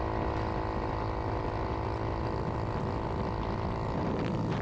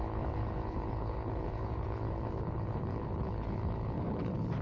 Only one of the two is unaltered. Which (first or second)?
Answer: first